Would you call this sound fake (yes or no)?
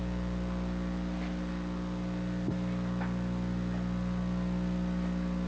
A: no